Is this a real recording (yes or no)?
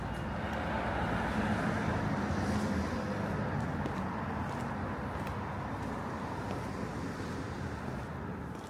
yes